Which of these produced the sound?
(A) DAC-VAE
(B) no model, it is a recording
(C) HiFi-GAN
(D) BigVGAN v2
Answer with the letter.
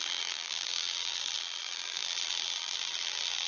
D